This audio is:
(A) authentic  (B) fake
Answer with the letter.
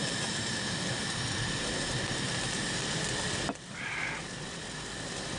A